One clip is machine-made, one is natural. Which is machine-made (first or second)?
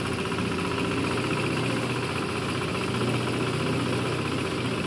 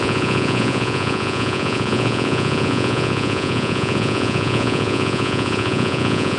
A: second